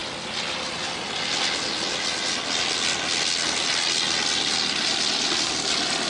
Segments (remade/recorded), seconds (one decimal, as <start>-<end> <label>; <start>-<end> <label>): 0.0-6.1 recorded

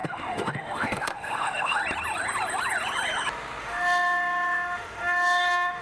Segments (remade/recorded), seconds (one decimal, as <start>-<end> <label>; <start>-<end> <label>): 0.0-1.8 remade; 1.8-3.6 recorded; 3.6-5.8 remade

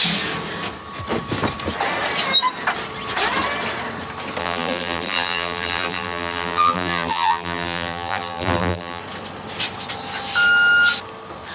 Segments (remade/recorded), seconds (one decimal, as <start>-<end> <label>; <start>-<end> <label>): 0.0-4.4 recorded; 4.4-9.0 remade; 9.0-11.5 recorded

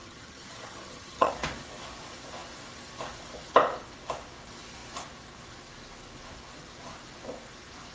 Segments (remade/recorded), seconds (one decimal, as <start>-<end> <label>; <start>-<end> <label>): 0.0-1.3 remade; 1.3-7.9 recorded

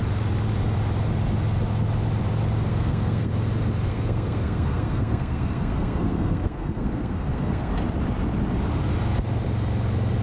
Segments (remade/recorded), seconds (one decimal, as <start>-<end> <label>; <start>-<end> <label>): 0.0-2.7 recorded; 2.7-3.3 remade; 3.3-3.9 recorded; 3.9-7.7 remade; 7.7-10.2 recorded